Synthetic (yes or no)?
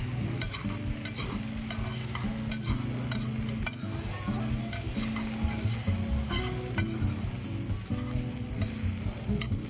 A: no